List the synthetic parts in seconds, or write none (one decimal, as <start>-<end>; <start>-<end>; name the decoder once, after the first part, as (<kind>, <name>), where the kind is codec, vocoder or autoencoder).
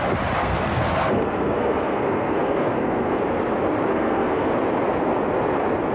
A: 0.4-3.2 (codec, SNAC); 3.9-4.5